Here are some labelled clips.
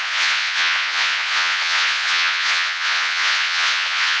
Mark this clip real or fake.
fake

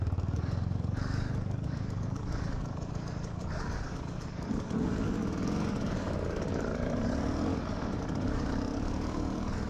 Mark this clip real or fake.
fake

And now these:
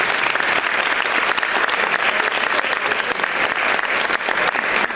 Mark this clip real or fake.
real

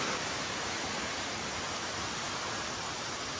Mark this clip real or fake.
real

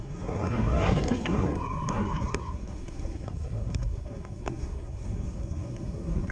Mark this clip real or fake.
fake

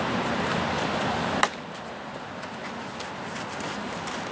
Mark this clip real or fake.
real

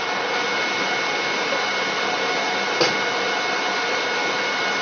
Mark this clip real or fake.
real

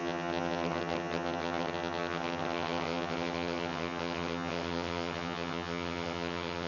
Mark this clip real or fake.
fake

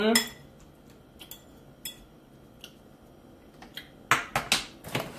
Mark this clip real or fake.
real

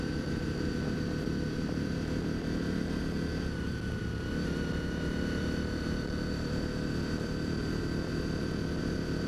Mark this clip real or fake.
fake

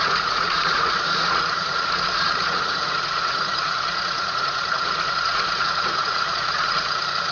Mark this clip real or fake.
fake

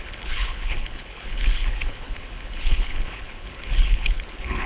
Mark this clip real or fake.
fake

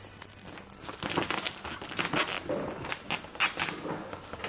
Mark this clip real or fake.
real